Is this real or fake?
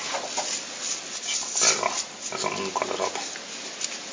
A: real